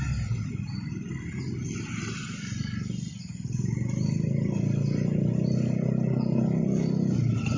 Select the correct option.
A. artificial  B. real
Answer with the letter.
B